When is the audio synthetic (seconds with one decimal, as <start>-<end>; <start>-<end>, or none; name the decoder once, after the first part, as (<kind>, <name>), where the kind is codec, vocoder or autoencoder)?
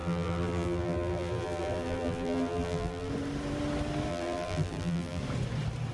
0.0-3.1 (vocoder, BigVGAN v2); 4.1-5.2